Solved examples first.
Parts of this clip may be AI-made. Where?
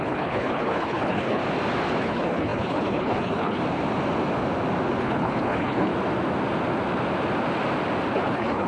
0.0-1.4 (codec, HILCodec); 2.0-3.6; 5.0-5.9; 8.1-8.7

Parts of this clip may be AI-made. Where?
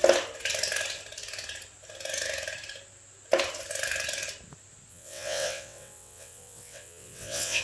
4.9-7.6 (vocoder, WaveNeXt)